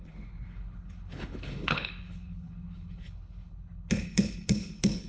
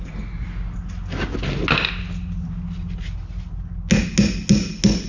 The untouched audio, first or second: second